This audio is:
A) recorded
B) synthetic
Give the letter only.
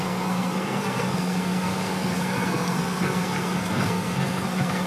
B